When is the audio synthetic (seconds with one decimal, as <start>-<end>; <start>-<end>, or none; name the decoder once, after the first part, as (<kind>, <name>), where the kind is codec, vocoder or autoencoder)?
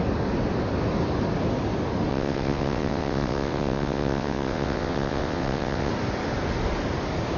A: 2.1-5.9 (vocoder, WaveNeXt)